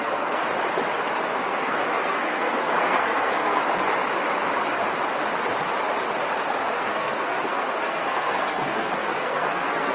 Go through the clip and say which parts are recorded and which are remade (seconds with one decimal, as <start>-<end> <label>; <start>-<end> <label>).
0.0-0.4 remade; 0.4-1.1 recorded; 1.1-3.6 remade; 3.6-6.6 recorded; 6.6-9.9 remade